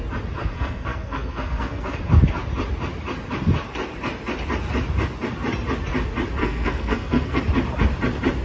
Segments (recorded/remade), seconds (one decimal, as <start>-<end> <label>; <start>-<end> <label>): 0.0-0.4 recorded; 0.4-2.0 remade; 2.0-6.4 recorded; 6.4-7.4 remade; 7.4-8.4 recorded